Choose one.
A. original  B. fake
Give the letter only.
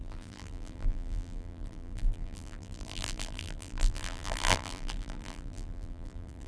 B